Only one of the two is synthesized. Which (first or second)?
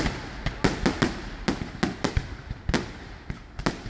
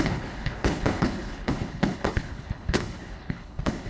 second